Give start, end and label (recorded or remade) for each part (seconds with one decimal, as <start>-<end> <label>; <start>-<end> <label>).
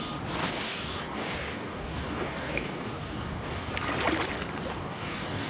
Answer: 0.0-0.4 recorded; 0.4-3.7 remade; 3.7-4.7 recorded; 4.7-5.5 remade